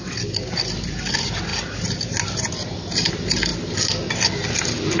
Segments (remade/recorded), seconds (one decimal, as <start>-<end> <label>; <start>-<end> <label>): 0.0-5.0 recorded